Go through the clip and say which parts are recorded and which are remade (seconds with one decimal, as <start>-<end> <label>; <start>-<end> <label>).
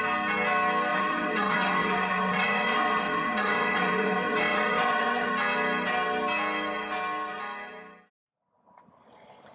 0.0-0.9 recorded; 0.9-5.3 remade; 5.3-9.5 recorded